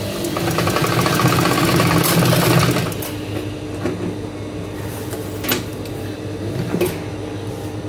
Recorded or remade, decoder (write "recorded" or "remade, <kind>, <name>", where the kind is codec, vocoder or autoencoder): recorded